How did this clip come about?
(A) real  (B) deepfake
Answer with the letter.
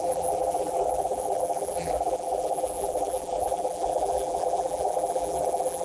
B